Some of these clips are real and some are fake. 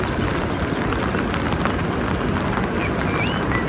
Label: real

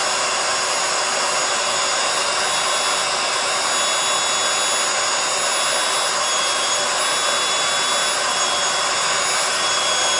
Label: real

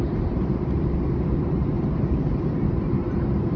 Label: fake